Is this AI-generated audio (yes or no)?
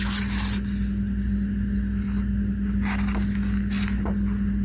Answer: no